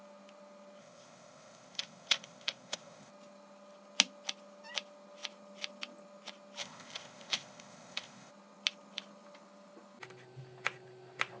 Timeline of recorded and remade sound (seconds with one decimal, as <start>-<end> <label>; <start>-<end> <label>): 0.0-0.8 recorded; 0.8-3.1 remade; 3.1-6.6 recorded; 6.6-8.3 remade; 8.3-11.4 recorded